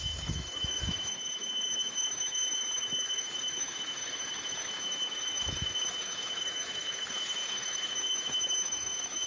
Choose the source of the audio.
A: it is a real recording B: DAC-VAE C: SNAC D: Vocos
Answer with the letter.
B